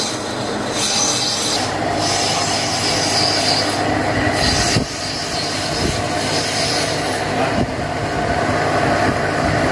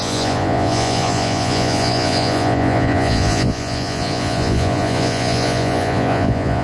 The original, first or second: first